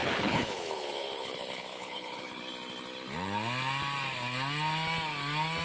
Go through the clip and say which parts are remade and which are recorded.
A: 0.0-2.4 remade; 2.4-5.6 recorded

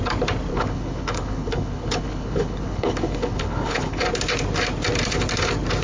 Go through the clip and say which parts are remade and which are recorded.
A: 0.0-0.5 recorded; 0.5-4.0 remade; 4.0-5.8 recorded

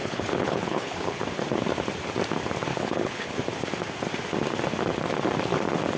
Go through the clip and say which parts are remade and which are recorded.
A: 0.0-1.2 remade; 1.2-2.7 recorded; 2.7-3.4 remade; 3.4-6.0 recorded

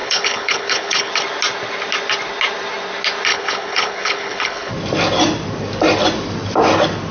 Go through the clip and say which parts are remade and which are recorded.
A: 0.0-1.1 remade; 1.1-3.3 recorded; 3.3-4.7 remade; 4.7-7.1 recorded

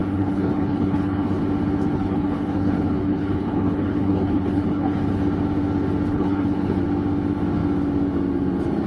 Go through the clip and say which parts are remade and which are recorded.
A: 0.0-1.4 remade; 1.4-1.9 recorded; 1.9-5.2 remade; 5.2-6.1 recorded; 6.1-6.8 remade; 6.8-8.9 recorded

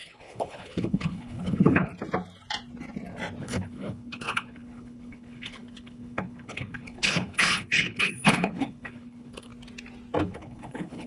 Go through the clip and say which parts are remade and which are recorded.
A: 0.0-1.9 remade; 1.9-3.4 recorded; 3.4-9.5 remade; 9.5-10.2 recorded; 10.2-11.1 remade

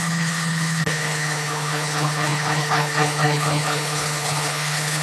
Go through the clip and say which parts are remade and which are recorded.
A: 0.0-5.0 remade